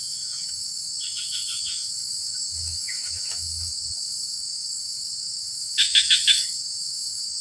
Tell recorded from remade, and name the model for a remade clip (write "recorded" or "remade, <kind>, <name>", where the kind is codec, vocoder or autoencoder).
remade, autoencoder, DAC-VAE